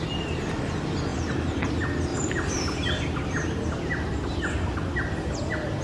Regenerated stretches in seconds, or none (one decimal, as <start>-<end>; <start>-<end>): 2.1-3.0